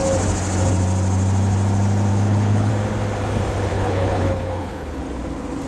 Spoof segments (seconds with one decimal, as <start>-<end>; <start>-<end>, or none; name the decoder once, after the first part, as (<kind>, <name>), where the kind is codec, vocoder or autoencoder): 2.1-2.7 (codec, HILCodec); 3.7-5.0